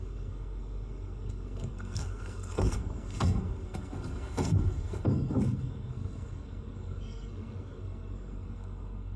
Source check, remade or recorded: remade